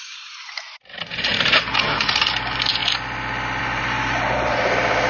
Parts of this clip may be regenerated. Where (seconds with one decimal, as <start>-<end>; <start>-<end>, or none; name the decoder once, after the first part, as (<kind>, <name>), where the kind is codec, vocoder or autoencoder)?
0.0-1.3 (vocoder, BigVGAN v2); 1.8-2.8; 3.6-5.1